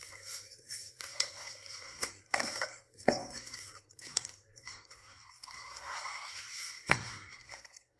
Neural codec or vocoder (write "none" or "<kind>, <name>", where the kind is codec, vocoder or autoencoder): codec, SNAC